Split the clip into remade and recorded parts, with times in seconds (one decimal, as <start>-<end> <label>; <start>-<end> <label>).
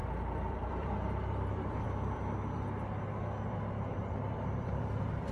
0.0-2.2 remade; 2.2-4.0 recorded; 4.0-5.3 remade